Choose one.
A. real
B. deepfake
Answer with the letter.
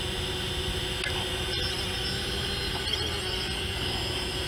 A